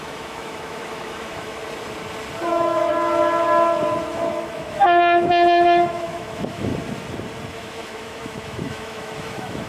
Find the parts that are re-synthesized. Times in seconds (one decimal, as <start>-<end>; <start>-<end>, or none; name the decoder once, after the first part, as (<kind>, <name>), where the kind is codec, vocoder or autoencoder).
0.0-1.6 (autoencoder, DAC-VAE); 2.5-2.9; 4.3-6.7; 7.5-9.7